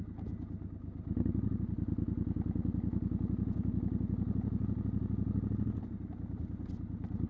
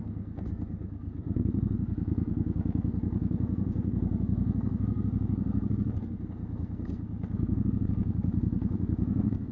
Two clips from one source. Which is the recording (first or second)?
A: first